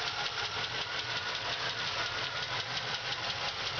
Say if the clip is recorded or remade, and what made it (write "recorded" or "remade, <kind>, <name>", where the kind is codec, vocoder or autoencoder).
recorded